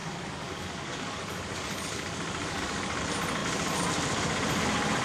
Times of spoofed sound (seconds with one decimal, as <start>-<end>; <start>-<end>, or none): 0.0-3.0

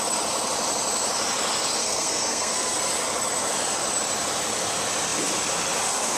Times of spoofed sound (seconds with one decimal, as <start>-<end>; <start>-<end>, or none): 1.8-2.9

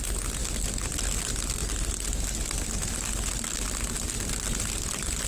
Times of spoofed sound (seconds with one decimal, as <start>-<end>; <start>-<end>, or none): none